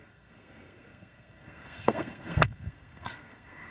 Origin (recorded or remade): remade